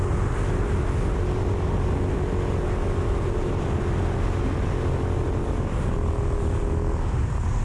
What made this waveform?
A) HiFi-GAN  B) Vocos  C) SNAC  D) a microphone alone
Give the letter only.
D